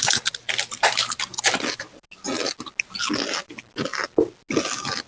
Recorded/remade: recorded